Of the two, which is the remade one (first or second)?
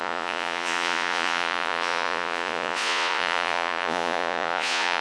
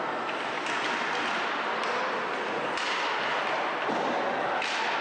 first